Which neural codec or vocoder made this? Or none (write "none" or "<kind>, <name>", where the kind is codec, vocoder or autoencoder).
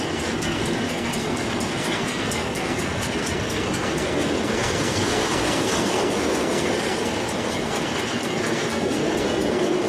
codec, SNAC